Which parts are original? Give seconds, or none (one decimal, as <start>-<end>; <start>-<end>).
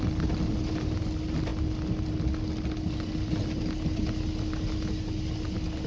0.0-5.9